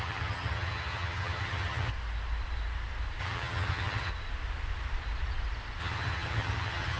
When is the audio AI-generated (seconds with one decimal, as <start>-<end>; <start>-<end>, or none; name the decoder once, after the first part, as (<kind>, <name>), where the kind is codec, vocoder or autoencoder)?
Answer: 0.0-1.9 (vocoder, HiFi-GAN); 3.2-4.1; 5.8-7.0